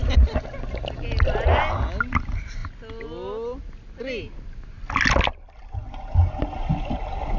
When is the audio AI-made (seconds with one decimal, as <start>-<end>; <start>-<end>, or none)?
none